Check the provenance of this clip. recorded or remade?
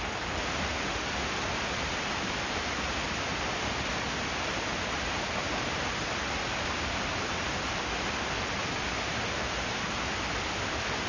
recorded